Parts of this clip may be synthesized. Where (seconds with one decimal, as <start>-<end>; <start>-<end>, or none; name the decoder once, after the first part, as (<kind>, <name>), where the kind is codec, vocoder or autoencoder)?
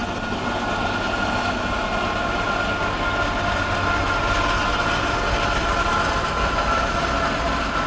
none